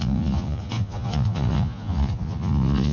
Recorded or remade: remade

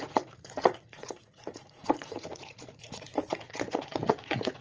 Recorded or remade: remade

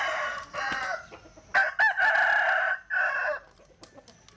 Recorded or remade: recorded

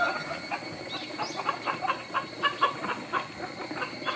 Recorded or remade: recorded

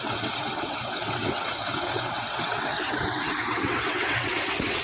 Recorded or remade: remade